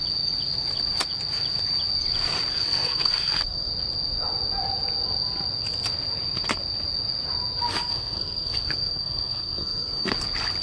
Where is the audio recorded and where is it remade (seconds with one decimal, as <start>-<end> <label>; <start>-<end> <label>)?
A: 0.0-2.5 recorded; 2.5-3.7 remade; 3.7-7.7 recorded; 7.7-10.2 remade; 10.2-10.6 recorded